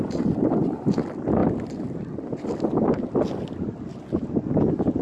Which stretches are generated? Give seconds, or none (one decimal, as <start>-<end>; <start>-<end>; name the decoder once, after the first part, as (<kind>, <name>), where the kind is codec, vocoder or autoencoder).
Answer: none

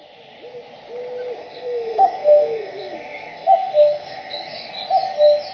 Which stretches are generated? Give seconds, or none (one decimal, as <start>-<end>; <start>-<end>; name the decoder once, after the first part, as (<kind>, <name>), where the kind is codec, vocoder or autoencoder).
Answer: 1.4-4.7 (codec, SNAC)

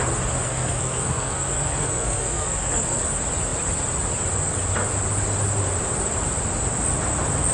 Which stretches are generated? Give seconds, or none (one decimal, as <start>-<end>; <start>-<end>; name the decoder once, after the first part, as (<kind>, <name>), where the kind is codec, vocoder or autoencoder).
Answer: 0.4-3.1 (codec, SNAC)